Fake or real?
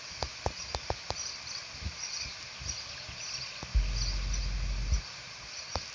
real